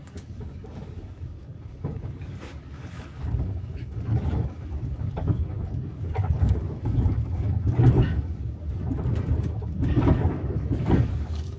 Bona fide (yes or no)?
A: no